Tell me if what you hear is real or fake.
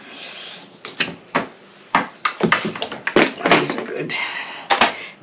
real